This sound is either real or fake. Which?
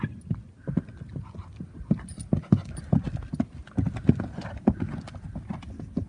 real